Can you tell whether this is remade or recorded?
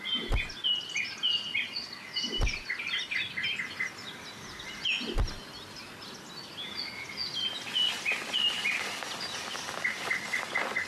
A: recorded